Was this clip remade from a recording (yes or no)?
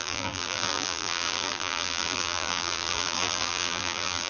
yes